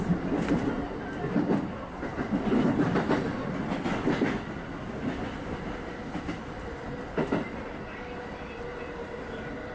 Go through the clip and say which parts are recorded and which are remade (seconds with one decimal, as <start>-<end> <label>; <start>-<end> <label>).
0.0-9.7 recorded